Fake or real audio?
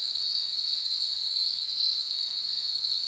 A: fake